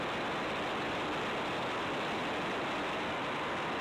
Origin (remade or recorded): recorded